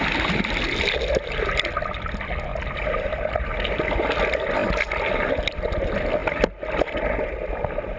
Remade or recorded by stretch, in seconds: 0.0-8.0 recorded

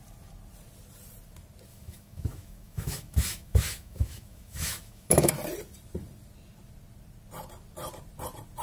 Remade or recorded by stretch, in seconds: 0.0-1.7 recorded; 1.7-5.3 remade; 5.3-8.6 recorded

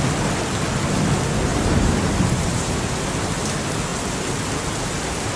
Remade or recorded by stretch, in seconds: 0.0-1.5 recorded; 1.5-2.8 remade; 2.8-5.4 recorded

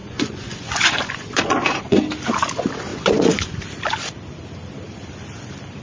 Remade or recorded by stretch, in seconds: 0.0-2.0 remade; 2.0-2.9 recorded; 2.9-3.6 remade; 3.6-5.8 recorded

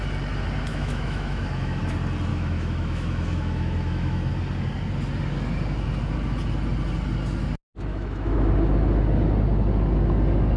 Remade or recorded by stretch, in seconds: 0.0-0.7 recorded; 0.7-1.8 remade; 1.8-2.3 recorded; 2.3-4.3 remade; 4.3-7.9 recorded; 7.9-8.5 remade; 8.5-10.6 recorded